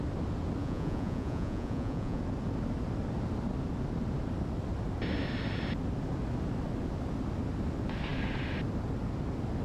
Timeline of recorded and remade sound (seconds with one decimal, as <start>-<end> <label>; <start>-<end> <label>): 0.0-0.6 recorded; 0.6-2.2 remade; 2.2-9.6 recorded